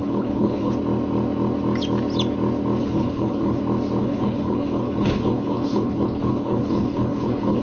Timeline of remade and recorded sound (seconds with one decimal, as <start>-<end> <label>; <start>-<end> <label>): 0.0-0.7 remade; 0.7-2.8 recorded; 2.8-3.6 remade; 3.6-4.0 recorded; 4.0-7.6 remade